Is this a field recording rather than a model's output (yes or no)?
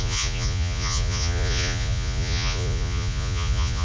no